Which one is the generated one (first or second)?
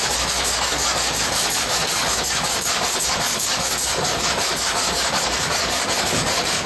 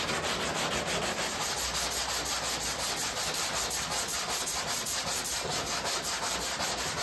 first